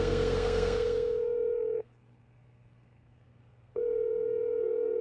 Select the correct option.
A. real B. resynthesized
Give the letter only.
B